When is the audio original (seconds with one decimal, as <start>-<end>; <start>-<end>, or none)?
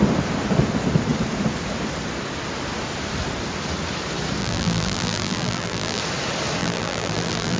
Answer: 0.0-4.4; 6.0-6.6